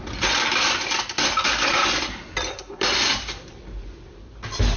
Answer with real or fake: fake